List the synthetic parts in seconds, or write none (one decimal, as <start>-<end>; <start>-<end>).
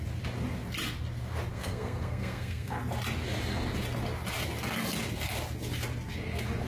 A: 1.5-2.8